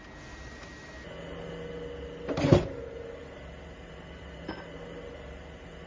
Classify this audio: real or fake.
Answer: real